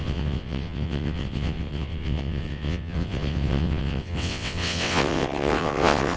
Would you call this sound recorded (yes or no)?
no